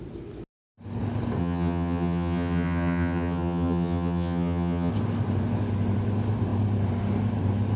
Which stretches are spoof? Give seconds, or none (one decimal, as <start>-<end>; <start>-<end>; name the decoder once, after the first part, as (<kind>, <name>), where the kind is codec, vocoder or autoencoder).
1.4-4.9 (vocoder, HiFi-GAN)

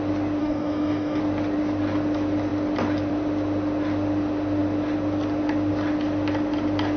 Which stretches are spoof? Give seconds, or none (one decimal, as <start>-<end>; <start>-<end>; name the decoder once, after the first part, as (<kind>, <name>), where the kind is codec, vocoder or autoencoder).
0.4-1.2 (codec, DAC)

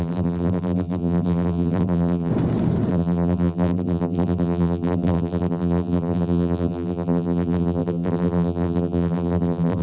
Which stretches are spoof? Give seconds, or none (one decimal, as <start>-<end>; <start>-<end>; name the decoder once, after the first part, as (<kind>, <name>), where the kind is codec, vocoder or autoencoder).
0.0-2.3 (vocoder, BigVGAN v2); 2.9-9.8

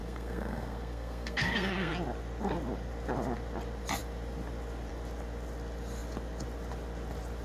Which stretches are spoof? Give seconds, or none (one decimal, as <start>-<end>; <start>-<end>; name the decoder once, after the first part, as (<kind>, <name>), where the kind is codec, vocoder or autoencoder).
0.0-1.9 (codec, SNAC)